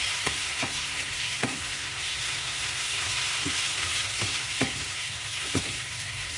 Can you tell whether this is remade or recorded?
remade